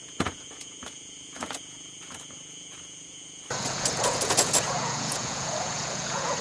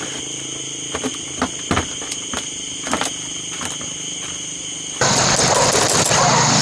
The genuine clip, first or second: second